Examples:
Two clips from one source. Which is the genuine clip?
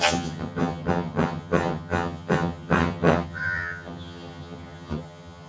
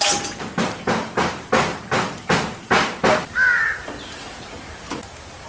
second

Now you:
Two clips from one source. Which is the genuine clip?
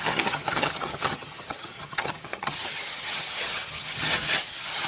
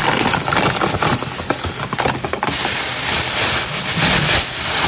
second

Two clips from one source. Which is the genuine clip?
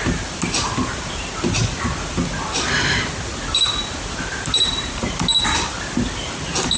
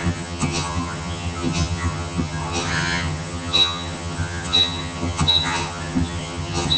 first